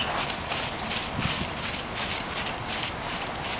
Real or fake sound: real